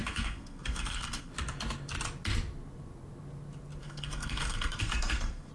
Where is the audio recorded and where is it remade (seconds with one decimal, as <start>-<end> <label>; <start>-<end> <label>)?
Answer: 0.0-1.3 remade; 1.3-3.8 recorded; 3.8-5.5 remade